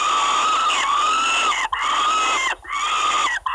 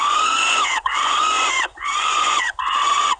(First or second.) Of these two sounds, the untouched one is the first